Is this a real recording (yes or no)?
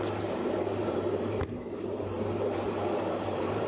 no